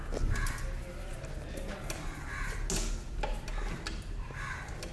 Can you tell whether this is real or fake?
real